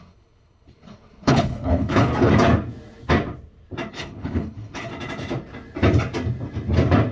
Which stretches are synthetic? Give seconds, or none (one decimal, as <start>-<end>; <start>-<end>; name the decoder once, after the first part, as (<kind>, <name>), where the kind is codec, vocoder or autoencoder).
0.0-2.1 (codec, HILCodec); 3.9-4.9